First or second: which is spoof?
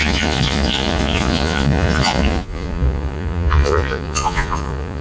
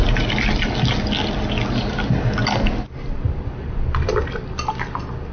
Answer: first